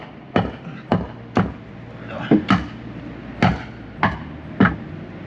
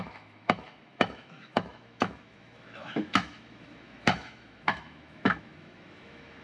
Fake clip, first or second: second